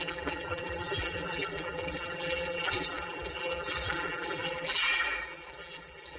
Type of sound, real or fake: fake